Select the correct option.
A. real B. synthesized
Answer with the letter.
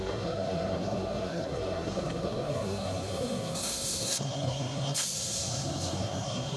B